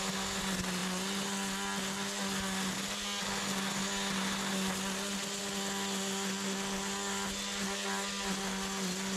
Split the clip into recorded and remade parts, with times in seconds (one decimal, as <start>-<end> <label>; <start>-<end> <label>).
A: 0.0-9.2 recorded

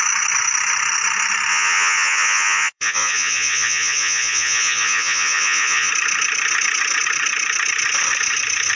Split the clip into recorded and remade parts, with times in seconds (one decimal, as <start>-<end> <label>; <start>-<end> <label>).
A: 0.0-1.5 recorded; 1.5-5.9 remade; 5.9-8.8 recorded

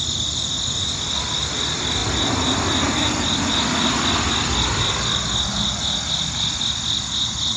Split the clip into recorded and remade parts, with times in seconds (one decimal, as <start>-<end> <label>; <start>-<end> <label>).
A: 0.0-7.6 recorded

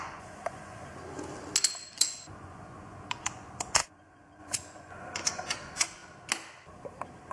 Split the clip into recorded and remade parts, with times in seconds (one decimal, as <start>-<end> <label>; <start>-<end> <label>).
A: 0.0-0.9 remade; 0.9-1.9 recorded; 1.9-6.0 remade; 6.0-7.3 recorded